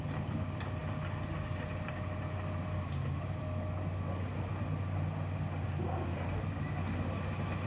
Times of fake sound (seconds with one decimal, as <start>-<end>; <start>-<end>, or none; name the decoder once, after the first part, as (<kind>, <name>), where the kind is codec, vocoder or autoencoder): none